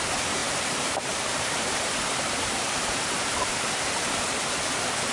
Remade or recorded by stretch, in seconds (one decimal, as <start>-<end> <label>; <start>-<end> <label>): 0.0-0.4 recorded; 0.4-3.5 remade; 3.5-5.1 recorded